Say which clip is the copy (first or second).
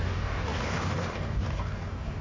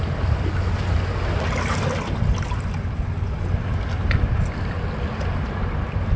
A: first